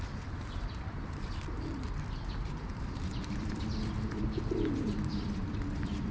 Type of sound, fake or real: fake